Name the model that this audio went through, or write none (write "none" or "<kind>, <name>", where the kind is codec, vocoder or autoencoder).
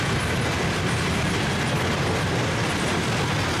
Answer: none